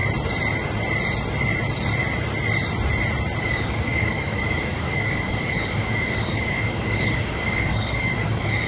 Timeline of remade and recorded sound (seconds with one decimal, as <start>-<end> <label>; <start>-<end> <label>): 0.0-3.4 recorded; 3.4-8.7 remade